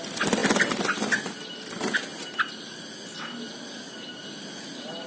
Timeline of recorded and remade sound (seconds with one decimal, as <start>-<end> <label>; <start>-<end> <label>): 0.0-5.1 recorded